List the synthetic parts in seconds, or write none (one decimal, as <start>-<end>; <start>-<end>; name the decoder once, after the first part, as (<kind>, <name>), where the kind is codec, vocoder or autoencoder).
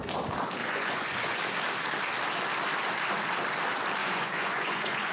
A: 0.6-1.4 (vocoder, Vocos); 4.0-5.1